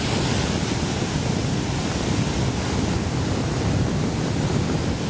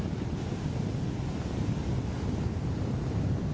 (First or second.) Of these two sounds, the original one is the second